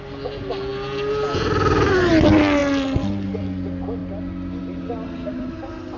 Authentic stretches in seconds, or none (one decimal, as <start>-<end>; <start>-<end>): 0.0-6.0